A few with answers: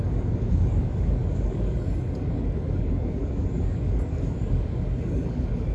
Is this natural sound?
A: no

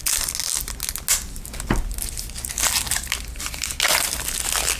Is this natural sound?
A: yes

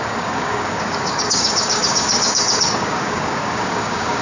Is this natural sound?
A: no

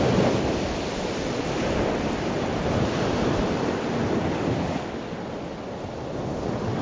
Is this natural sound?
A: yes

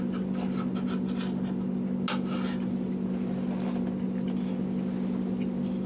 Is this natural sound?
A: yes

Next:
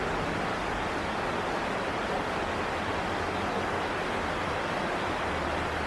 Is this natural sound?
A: yes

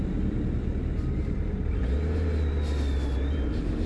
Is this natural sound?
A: yes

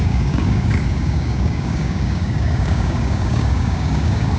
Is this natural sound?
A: no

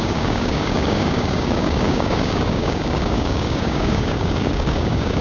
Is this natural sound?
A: no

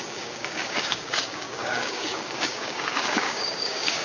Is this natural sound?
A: no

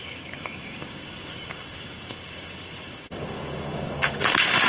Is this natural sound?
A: no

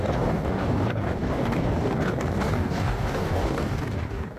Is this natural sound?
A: no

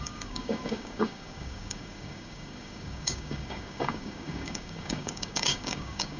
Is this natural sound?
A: no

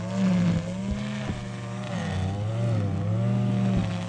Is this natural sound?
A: yes